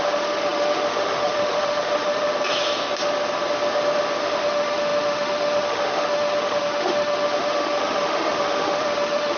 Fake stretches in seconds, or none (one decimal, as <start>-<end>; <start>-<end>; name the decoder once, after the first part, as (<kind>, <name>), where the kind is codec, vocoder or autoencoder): 0.0-2.3 (autoencoder, DAC-VAE); 4.2-9.4